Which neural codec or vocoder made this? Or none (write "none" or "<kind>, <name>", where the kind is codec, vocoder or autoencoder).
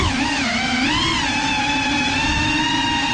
none